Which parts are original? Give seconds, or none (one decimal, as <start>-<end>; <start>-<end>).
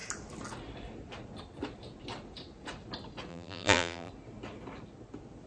0.0-3.3; 4.1-5.5